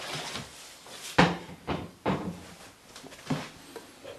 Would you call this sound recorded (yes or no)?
yes